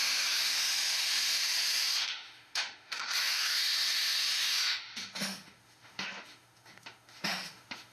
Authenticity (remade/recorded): remade